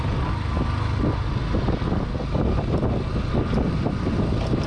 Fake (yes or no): no